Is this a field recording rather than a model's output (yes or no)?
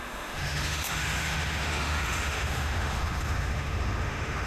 no